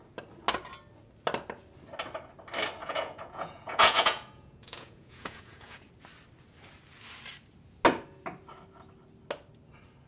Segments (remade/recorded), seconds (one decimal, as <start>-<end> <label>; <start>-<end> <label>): 0.0-2.8 recorded; 2.8-5.9 remade; 5.9-10.1 recorded